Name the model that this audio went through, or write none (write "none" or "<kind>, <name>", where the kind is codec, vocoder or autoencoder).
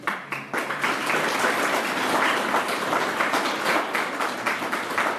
none